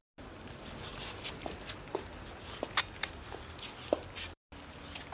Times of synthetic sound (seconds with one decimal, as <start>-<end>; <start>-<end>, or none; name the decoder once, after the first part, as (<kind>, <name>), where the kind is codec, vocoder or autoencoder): none